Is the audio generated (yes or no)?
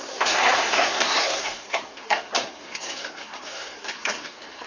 yes